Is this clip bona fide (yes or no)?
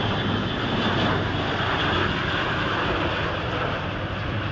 yes